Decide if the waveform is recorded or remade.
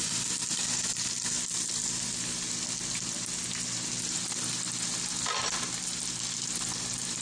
recorded